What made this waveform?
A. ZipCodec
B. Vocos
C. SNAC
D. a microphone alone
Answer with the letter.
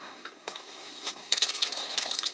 C